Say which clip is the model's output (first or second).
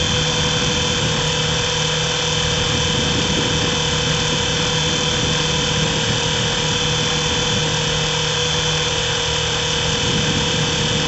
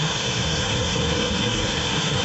second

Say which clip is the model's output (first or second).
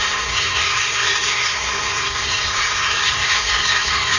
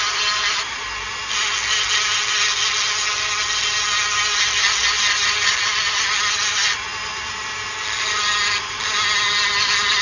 first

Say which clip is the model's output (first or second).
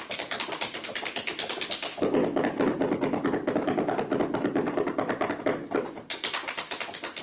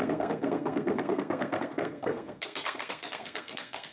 second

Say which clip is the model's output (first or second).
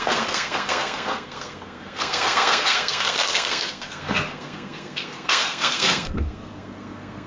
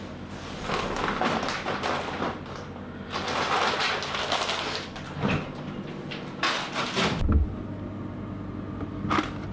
first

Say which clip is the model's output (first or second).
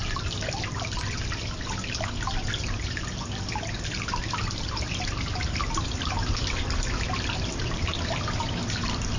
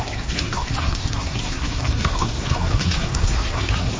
second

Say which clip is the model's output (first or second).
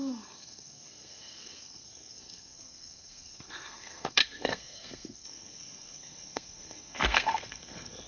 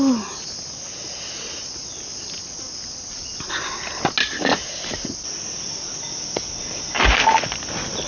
first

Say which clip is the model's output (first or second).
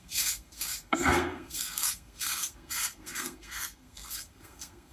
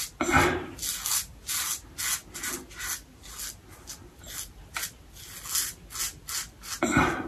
first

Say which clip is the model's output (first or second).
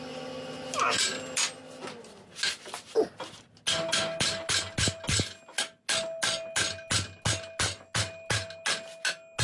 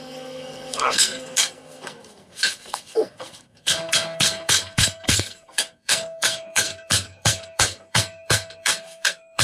second